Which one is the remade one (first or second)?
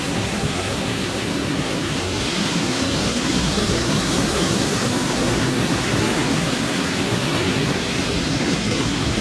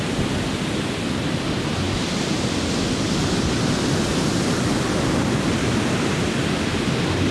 first